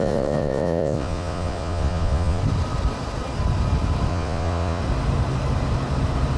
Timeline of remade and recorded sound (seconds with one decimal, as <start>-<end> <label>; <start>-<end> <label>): 0.0-2.4 remade; 2.4-4.1 recorded; 4.1-4.8 remade; 4.8-6.4 recorded